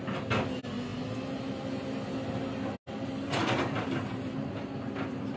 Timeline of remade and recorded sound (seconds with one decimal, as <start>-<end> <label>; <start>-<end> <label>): 0.0-5.4 recorded